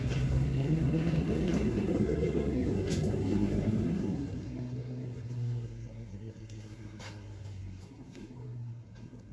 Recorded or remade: remade